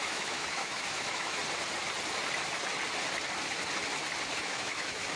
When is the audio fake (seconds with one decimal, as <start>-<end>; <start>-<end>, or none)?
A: 0.0-1.4; 4.4-5.2